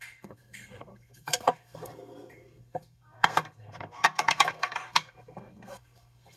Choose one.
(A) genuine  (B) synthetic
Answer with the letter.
B